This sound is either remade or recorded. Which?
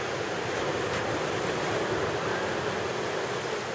recorded